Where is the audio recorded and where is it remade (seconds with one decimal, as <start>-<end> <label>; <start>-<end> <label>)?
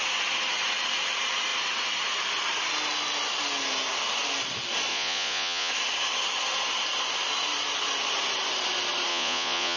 0.0-4.9 recorded; 4.9-5.7 remade; 5.7-9.1 recorded; 9.1-9.8 remade